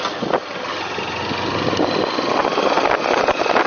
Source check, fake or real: real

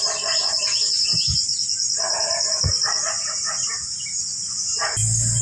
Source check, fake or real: real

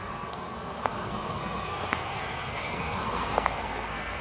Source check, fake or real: fake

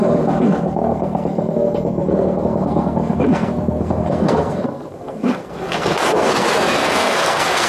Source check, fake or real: fake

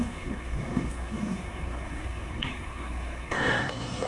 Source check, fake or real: fake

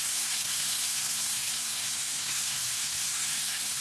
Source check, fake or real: fake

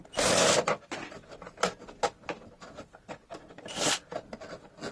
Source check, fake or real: real